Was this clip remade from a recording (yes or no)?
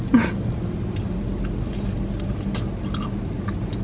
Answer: no